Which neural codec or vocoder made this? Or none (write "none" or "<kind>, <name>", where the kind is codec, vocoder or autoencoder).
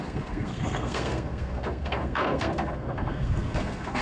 codec, SNAC